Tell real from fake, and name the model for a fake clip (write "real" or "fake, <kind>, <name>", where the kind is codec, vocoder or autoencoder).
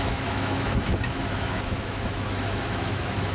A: fake, autoencoder, DAC-VAE